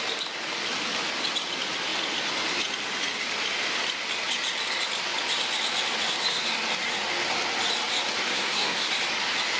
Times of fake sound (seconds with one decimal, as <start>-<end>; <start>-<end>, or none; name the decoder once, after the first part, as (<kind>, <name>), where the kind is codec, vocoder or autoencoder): 8.3-8.9 (codec, SNAC)